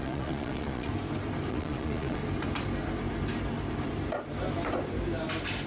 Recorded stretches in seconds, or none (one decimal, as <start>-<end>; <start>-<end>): 0.9-1.5; 2.2-5.7